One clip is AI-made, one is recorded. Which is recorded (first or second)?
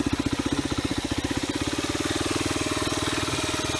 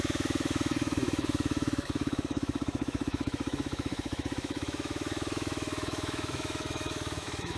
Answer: first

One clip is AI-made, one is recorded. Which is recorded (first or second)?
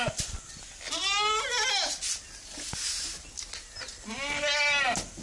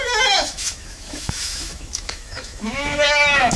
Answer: first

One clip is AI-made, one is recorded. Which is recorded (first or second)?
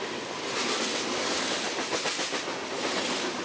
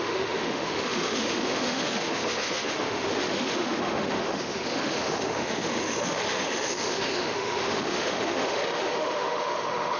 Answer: first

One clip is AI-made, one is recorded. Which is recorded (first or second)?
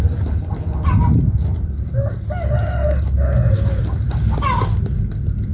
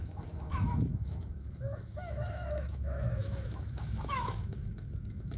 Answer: first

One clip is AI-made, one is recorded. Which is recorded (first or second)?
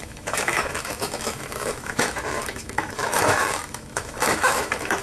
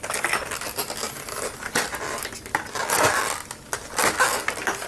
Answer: second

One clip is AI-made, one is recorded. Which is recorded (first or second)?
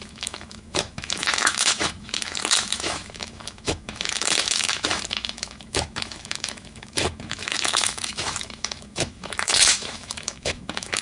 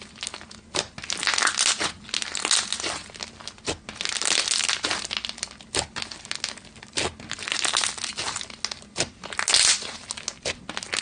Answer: second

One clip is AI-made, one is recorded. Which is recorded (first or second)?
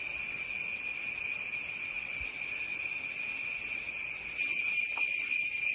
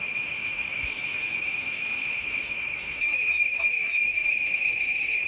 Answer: first